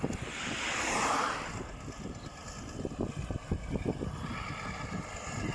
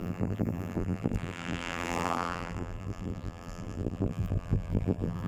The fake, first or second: second